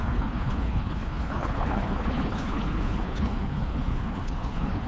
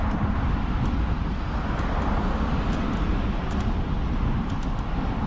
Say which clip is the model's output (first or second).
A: first